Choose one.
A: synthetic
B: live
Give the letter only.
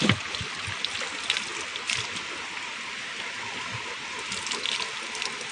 B